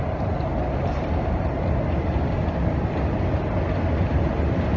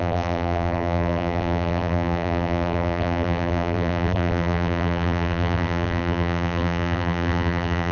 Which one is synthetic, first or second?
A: second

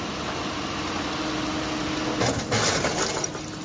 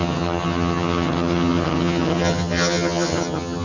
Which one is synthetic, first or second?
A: second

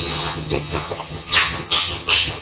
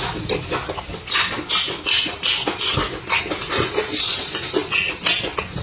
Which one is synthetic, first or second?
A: first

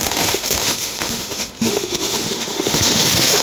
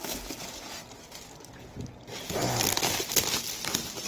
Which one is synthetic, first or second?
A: first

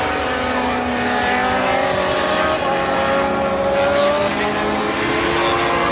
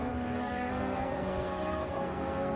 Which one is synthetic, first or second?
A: second